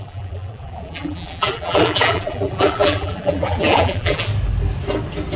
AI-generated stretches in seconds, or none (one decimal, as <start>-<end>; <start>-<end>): 0.0-4.3